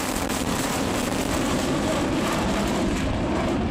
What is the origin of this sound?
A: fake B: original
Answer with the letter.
A